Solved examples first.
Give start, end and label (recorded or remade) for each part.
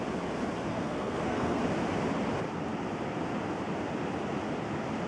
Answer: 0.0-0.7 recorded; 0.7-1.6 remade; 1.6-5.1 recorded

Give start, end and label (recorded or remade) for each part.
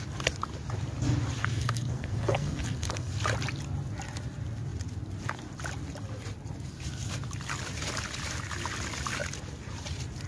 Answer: 0.0-1.4 recorded; 1.4-3.1 remade; 3.1-10.3 recorded